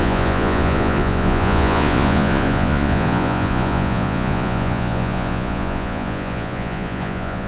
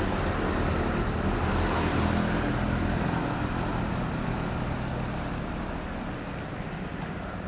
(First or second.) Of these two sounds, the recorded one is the second